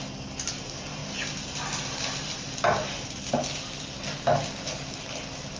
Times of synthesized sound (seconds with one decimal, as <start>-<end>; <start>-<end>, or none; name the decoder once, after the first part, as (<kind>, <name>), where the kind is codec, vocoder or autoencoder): none